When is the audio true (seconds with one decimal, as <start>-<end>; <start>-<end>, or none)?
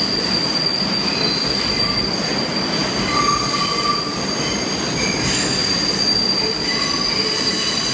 0.0-7.9